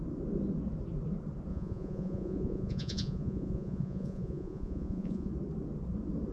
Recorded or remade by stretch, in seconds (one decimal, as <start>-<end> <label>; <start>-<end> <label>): 0.0-1.5 recorded; 1.5-5.3 remade; 5.3-6.3 recorded